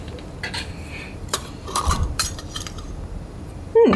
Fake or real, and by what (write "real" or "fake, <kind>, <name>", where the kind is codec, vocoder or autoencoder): fake, vocoder, BigVGAN v2